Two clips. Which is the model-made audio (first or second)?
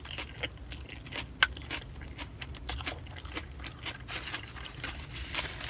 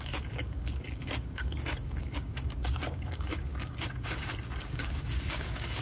second